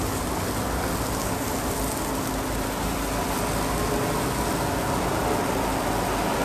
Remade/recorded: recorded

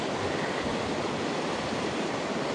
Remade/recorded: remade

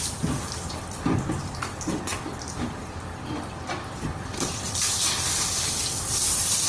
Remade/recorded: recorded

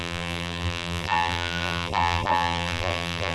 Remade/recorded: remade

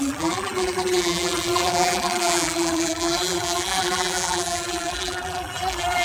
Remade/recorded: remade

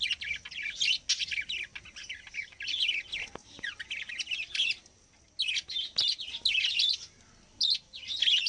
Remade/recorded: recorded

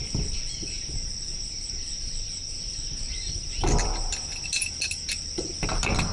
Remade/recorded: recorded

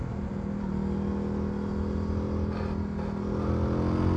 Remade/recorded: recorded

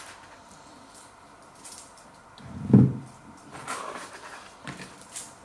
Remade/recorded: remade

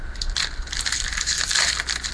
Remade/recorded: recorded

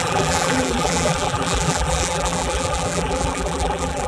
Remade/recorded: remade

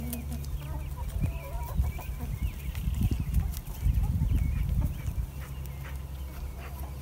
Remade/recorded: recorded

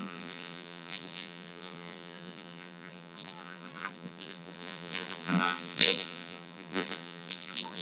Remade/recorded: remade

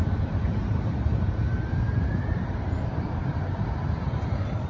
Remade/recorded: remade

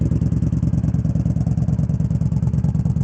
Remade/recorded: recorded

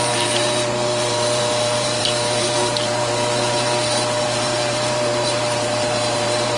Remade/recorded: remade